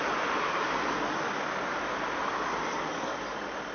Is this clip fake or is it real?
real